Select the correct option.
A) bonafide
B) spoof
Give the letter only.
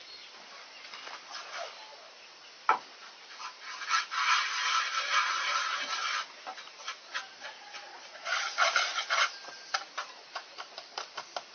A